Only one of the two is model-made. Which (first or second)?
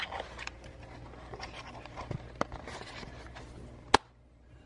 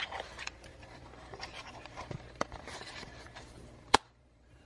second